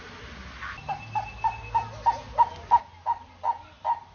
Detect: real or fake real